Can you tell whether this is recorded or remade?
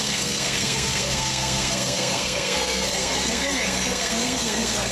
remade